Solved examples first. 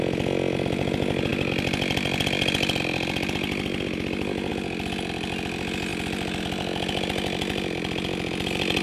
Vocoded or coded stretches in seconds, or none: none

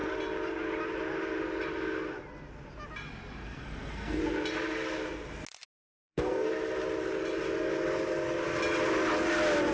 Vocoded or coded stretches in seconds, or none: 3.4-4.2 (codec, SNAC); 5.9-6.5